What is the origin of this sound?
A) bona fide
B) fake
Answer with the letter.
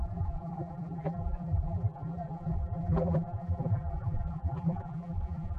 B